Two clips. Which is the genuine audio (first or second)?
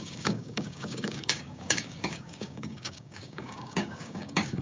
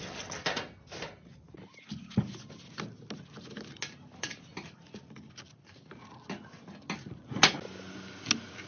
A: second